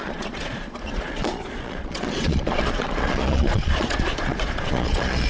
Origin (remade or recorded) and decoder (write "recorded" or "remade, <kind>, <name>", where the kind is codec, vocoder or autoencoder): remade, vocoder, Vocos